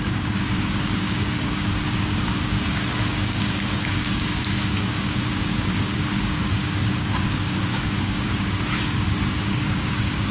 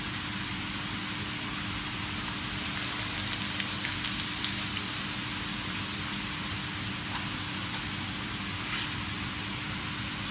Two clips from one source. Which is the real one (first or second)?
second